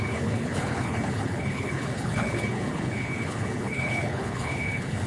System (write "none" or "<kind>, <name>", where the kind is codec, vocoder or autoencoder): codec, HILCodec